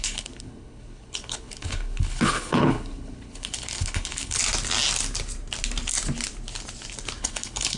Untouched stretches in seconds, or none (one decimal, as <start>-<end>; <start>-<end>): 4.4-7.2